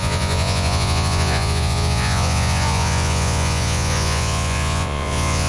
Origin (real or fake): fake